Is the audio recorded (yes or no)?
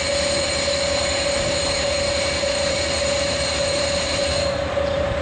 no